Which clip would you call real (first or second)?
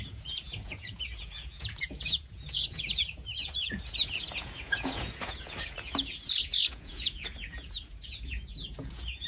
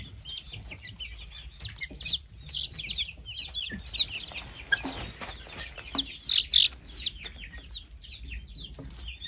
second